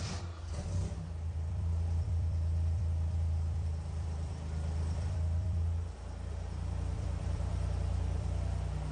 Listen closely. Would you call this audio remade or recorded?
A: remade